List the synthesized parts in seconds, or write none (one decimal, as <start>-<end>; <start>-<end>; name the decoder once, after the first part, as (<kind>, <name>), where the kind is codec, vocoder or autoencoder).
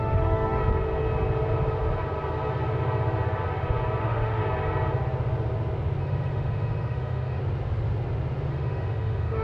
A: 0.0-0.6 (autoencoder, DAC-VAE); 4.0-4.4; 6.0-7.4; 8.5-9.4